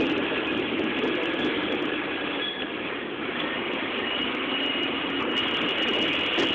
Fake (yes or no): no